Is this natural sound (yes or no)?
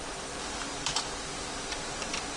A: yes